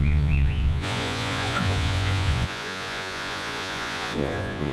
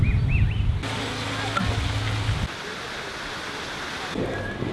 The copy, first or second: first